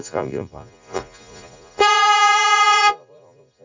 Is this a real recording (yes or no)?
no